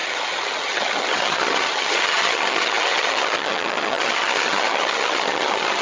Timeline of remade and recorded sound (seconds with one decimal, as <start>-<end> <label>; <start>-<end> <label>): 0.0-5.8 remade